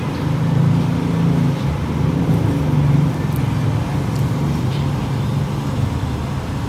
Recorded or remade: recorded